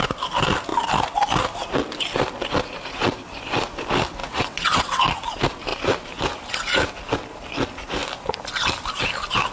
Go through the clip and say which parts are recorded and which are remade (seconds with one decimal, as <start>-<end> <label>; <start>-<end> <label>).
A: 0.0-4.2 recorded; 4.2-5.0 remade; 5.0-9.5 recorded